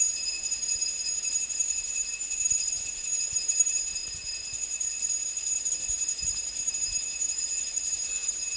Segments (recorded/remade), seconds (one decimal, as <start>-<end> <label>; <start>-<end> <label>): 0.0-4.0 remade; 4.0-5.7 recorded; 5.7-8.6 remade